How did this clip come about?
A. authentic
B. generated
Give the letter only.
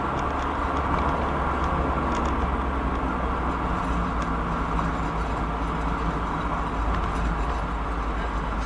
A